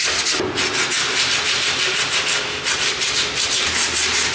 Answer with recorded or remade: recorded